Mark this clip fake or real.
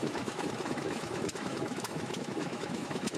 fake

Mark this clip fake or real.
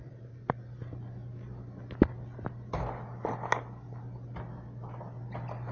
real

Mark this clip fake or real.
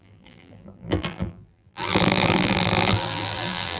fake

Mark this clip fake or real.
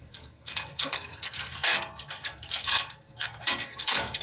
fake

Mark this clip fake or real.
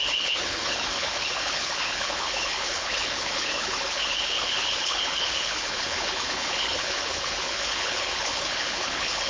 fake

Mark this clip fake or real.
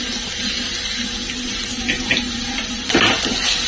real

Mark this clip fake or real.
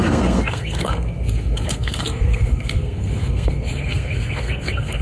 fake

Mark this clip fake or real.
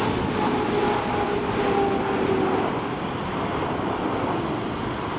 real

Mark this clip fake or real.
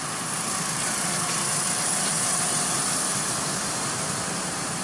fake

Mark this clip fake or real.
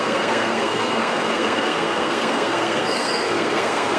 fake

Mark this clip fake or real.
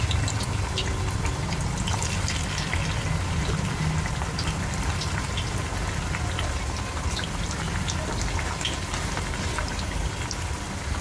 real